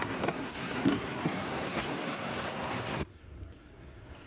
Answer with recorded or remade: remade